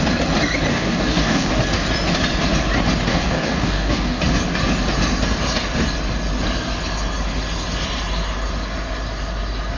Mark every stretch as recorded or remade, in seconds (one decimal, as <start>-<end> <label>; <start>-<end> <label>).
0.0-0.7 recorded; 0.7-1.5 remade; 1.5-3.1 recorded; 3.1-4.2 remade; 4.2-9.8 recorded